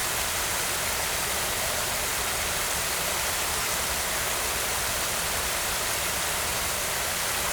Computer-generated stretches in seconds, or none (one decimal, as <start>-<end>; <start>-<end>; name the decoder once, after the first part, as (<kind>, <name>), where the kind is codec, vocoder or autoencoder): none